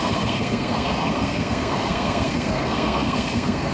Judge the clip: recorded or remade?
remade